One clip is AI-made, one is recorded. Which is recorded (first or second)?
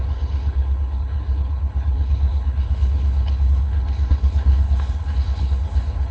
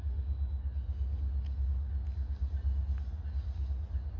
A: second